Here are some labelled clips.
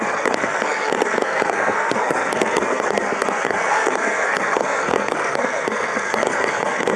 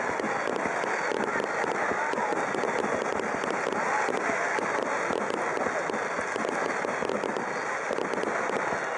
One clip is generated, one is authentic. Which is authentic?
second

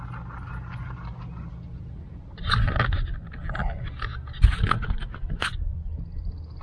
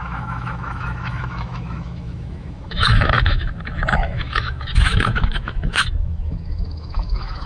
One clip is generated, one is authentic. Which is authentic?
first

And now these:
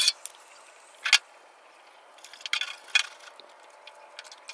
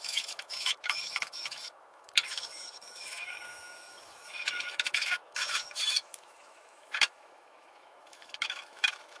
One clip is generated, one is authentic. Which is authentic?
first